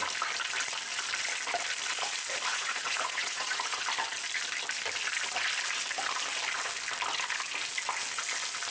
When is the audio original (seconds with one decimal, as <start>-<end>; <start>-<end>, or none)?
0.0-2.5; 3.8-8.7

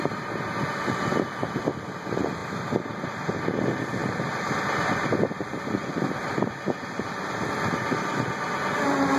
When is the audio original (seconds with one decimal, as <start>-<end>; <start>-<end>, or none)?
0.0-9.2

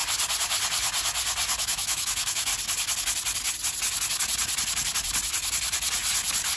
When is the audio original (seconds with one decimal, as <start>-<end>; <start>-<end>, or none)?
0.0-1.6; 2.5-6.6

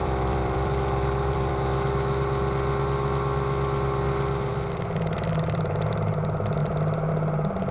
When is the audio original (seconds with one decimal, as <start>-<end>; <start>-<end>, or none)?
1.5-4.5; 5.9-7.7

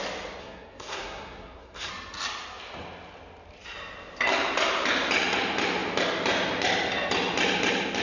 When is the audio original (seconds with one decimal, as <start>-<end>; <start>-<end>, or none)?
0.0-0.4; 1.9-8.0

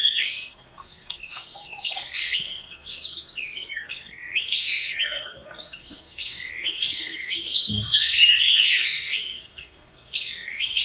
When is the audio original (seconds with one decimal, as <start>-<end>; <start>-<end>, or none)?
none

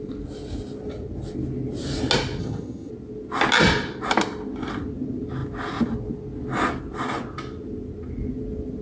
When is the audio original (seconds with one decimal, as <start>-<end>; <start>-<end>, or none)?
0.0-2.4; 2.9-8.8